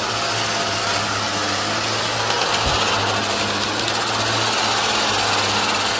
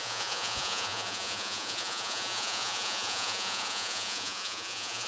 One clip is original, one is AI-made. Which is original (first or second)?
first